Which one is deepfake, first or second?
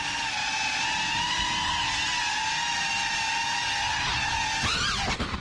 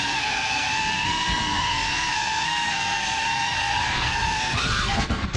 second